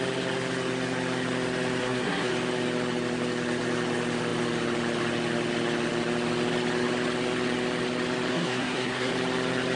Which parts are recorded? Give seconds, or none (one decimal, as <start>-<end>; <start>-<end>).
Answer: 0.0-1.8; 2.3-8.3; 9.1-9.8